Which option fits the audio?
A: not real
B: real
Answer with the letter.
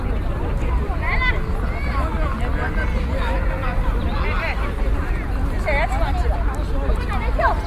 B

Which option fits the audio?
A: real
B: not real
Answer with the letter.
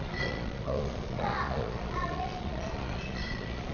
B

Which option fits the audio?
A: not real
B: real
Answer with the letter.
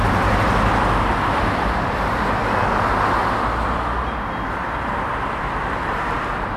B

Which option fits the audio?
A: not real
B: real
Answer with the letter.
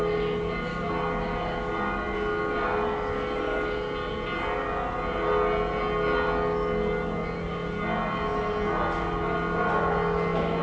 B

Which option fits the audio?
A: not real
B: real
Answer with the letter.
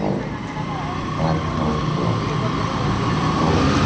B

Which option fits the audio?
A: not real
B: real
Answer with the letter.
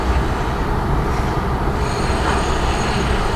B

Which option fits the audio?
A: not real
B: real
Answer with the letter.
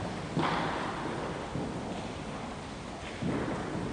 B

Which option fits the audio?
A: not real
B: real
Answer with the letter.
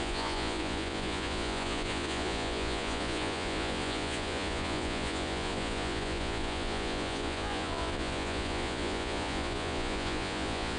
A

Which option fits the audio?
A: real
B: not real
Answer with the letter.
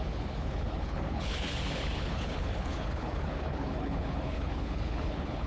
B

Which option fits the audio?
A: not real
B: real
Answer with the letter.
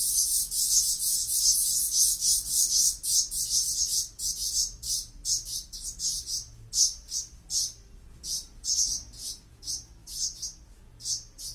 B